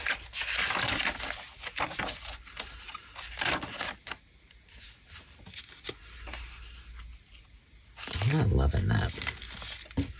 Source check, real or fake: real